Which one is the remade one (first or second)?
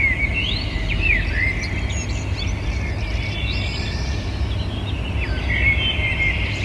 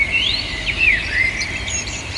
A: second